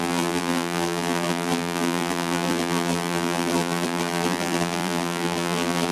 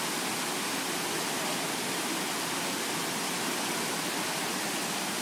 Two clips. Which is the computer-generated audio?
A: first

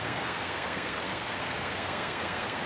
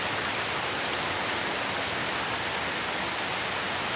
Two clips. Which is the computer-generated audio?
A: first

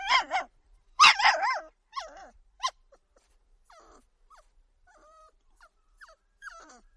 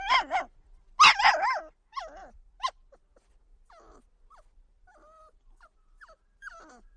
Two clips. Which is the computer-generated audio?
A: first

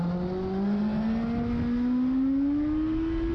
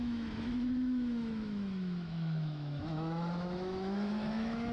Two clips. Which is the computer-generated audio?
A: second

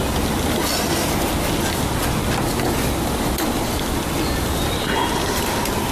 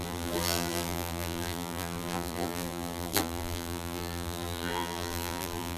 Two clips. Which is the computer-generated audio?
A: second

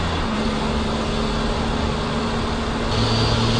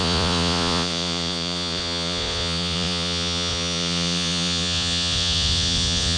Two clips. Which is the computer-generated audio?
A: second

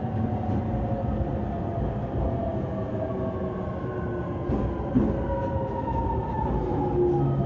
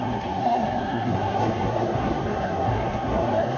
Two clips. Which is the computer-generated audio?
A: second